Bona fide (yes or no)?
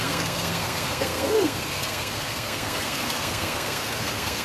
no